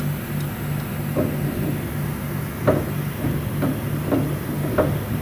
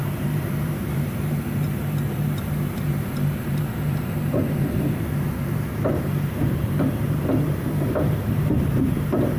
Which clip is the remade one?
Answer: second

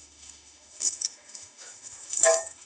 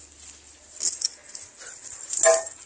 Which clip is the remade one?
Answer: first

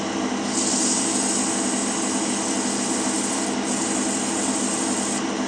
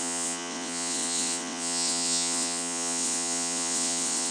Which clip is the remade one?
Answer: second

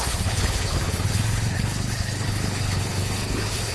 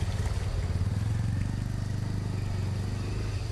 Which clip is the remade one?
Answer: first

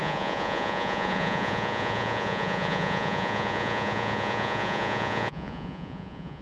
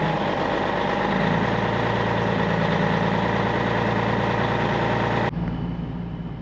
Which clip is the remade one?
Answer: first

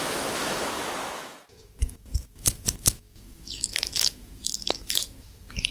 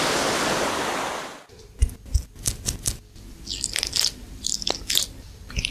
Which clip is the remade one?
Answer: first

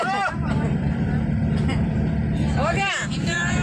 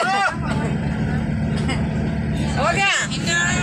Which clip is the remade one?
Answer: first